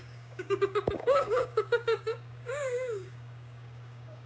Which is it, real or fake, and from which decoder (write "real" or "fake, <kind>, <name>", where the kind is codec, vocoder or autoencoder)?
fake, codec, DAC